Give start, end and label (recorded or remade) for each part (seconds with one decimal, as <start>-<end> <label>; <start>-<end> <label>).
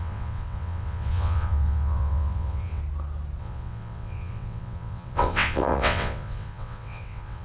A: 0.0-2.8 remade; 2.8-3.4 recorded; 3.4-7.4 remade